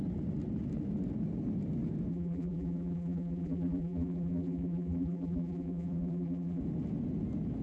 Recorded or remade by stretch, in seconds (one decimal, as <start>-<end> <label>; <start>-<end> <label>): 0.0-2.1 recorded; 2.1-6.6 remade; 6.6-7.6 recorded